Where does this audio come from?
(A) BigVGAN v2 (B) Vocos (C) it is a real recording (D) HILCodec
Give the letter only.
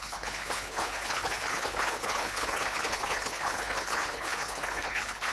D